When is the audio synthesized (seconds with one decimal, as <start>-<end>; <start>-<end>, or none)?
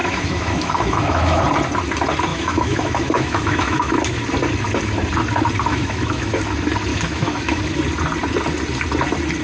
0.0-1.4; 2.3-4.2; 5.7-6.4; 6.9-7.6